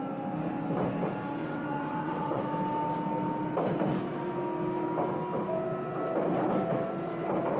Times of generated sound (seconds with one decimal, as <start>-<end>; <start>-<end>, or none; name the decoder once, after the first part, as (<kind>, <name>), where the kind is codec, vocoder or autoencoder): 1.4-2.4 (vocoder, WaveNeXt)